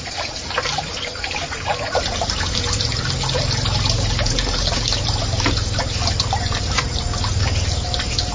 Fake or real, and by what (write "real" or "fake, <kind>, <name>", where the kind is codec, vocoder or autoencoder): fake, vocoder, BigVGAN v2